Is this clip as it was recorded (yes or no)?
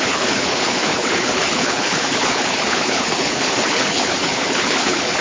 no